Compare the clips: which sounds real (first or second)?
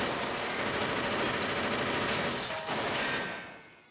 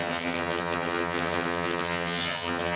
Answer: first